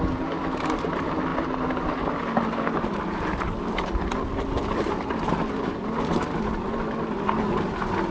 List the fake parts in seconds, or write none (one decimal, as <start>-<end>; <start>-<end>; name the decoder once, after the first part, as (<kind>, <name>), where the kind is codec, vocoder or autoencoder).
none